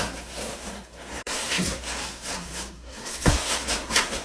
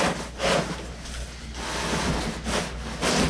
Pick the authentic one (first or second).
second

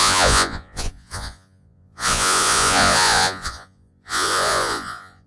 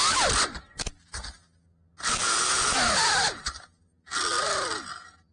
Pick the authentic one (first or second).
second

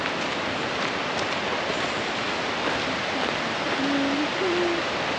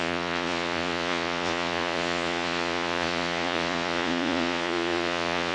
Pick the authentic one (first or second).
first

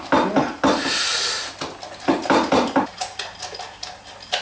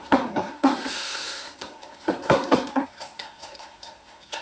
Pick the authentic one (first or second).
first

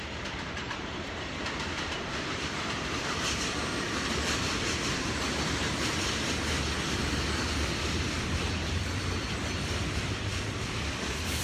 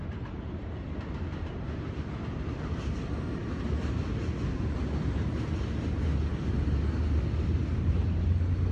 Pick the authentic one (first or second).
second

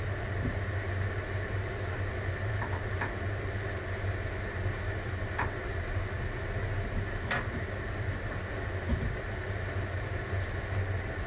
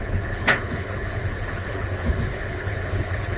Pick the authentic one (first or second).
first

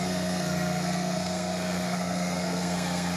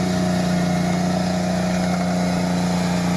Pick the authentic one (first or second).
second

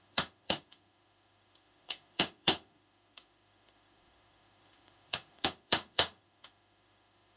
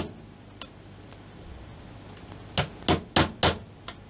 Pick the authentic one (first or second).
second